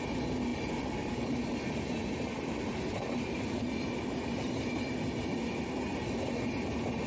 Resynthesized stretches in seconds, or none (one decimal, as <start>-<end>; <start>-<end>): 0.5-3.7